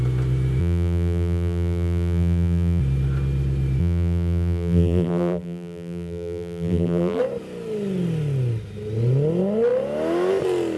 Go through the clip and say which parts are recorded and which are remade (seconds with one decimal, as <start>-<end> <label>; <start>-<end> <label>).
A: 0.0-0.6 recorded; 0.6-2.8 remade; 2.8-3.8 recorded; 3.8-7.2 remade; 7.2-10.8 recorded